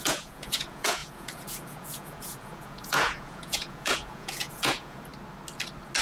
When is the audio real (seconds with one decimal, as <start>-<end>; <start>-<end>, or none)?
5.1-6.0